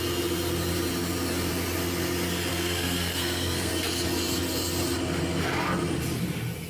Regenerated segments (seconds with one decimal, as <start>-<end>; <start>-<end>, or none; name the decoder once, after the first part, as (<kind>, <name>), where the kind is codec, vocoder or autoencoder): 2.5-3.7 (codec, SNAC)

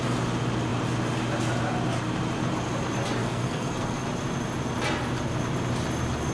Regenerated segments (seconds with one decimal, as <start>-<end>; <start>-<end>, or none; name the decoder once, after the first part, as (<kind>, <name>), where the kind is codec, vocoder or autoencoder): 3.2-4.0 (codec, SNAC)

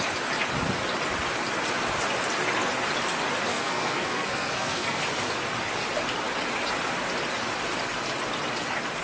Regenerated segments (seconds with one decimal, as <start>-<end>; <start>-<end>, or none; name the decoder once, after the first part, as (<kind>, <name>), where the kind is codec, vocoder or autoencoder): 3.5-5.0 (codec, SNAC)

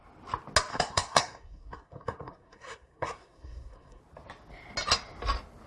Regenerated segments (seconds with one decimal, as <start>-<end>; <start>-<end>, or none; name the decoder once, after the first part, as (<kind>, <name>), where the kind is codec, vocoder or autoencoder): 0.7-4.0 (codec, SNAC)

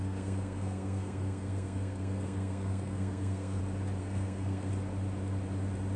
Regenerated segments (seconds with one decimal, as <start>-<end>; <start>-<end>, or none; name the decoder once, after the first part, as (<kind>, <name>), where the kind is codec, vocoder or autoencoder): 0.0-3.6 (codec, SNAC); 4.0-4.7